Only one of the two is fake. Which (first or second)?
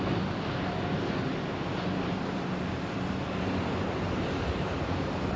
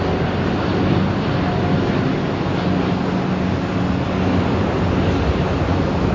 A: first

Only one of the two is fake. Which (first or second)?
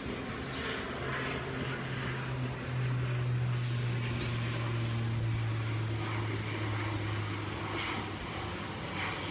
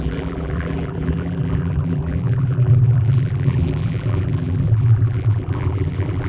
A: second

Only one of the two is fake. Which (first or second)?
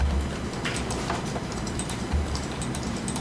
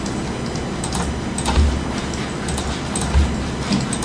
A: first